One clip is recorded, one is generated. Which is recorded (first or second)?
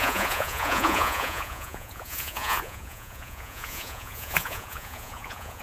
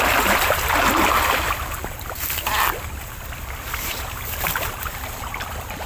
second